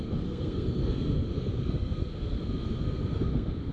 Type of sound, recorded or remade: remade